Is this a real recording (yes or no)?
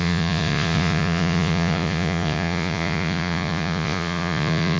no